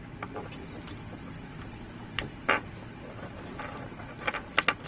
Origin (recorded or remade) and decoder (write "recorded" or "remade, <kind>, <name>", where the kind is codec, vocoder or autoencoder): recorded